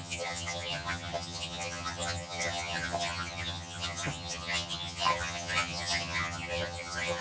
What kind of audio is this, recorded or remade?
remade